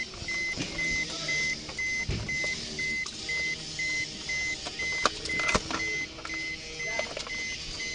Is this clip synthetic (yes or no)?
no